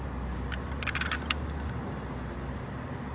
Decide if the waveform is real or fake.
real